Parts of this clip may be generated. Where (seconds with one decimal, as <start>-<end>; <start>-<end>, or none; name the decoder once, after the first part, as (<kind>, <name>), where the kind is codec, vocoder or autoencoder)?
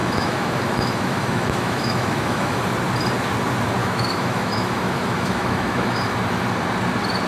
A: 0.0-2.6 (autoencoder, DAC-VAE); 3.8-6.1